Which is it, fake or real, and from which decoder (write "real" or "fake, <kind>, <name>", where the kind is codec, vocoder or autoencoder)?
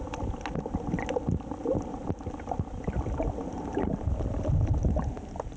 real